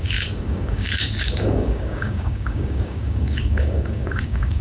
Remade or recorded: remade